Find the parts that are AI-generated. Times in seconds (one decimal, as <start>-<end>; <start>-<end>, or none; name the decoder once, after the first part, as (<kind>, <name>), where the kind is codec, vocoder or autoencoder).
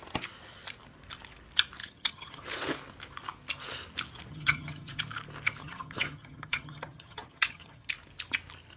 1.8-2.4 (vocoder, HiFi-GAN); 4.3-5.0; 5.6-7.9